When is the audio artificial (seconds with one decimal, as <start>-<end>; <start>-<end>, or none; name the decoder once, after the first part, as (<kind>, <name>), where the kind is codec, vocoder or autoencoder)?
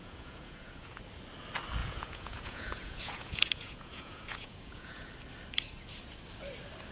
0.0-1.0 (vocoder, Vocos); 1.8-5.1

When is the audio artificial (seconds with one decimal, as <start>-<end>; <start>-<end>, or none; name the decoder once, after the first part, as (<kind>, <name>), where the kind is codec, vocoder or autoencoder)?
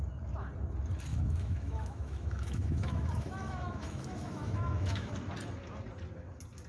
1.1-5.1 (autoencoder, DAC-VAE)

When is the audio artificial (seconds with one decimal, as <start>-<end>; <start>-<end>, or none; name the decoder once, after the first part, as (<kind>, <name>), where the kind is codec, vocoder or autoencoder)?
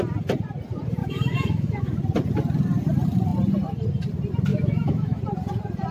1.0-2.0 (autoencoder, DAC-VAE); 4.5-5.2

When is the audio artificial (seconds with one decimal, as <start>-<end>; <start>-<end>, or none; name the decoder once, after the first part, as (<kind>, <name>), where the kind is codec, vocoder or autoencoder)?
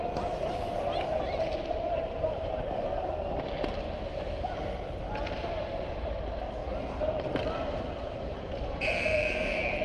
0.0-2.9 (vocoder, BigVGAN v2); 4.1-9.8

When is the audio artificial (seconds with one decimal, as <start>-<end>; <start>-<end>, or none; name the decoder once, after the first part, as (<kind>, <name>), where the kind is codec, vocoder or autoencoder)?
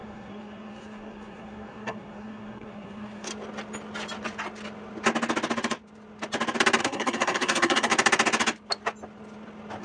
0.0-3.3 (codec, SNAC); 6.8-7.9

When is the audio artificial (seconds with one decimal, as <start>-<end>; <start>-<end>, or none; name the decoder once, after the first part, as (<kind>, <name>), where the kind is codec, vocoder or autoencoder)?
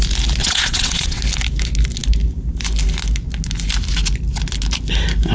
0.4-1.2 (vocoder, WaveNeXt)